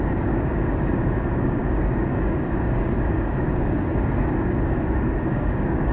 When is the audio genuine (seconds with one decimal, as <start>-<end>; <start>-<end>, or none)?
none